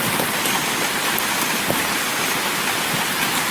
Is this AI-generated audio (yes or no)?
no